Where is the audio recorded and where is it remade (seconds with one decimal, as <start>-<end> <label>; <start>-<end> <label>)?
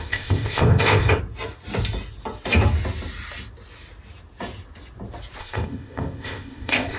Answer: 0.0-1.2 remade; 1.2-5.4 recorded; 5.4-7.0 remade